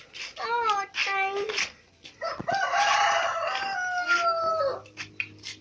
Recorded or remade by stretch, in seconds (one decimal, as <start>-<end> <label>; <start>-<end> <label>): 0.0-5.6 recorded